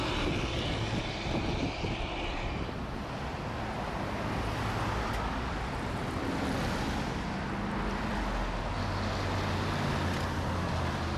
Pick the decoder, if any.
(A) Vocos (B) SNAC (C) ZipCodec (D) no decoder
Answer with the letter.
D